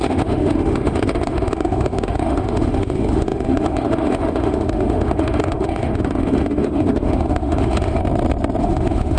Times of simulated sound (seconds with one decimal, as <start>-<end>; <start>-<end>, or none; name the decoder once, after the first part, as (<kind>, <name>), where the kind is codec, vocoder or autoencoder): 0.0-8.0 (autoencoder, DAC-VAE); 8.6-9.2